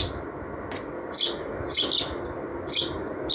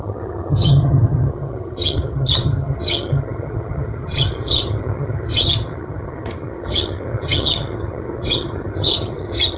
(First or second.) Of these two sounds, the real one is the first